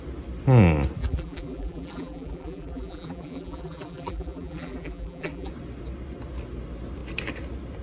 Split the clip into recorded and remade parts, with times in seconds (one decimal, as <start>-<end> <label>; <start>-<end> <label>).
0.0-1.0 recorded; 1.0-5.5 remade; 5.5-7.8 recorded